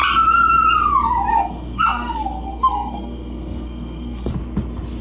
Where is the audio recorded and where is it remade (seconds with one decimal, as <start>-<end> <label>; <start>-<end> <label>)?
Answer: 0.0-1.3 recorded; 1.3-4.3 remade; 4.3-5.0 recorded